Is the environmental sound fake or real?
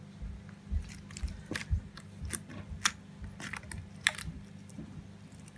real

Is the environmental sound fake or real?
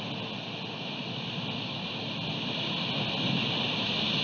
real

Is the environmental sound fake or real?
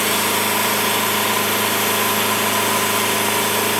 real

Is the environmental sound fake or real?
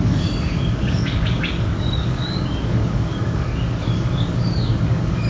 fake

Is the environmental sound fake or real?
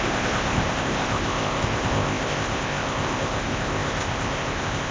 fake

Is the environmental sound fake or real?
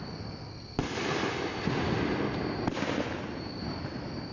real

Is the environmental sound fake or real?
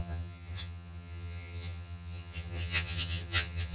fake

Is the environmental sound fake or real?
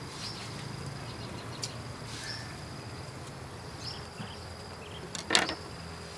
real